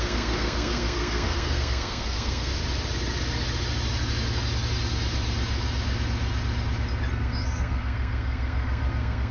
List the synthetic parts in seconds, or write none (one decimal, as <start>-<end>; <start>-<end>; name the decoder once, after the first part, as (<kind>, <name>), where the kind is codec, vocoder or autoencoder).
0.0-2.5 (codec, SNAC); 7.1-9.3